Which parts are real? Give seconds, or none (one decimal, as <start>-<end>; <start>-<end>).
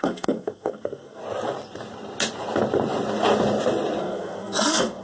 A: 1.2-4.0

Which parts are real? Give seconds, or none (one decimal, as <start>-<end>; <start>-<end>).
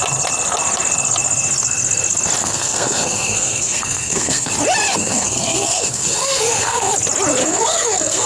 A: 0.0-2.4; 4.5-4.9; 6.9-7.4